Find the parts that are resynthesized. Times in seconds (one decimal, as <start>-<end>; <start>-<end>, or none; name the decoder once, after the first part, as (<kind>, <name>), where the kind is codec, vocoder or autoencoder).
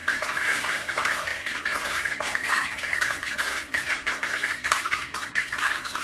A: 0.0-6.0 (codec, SNAC)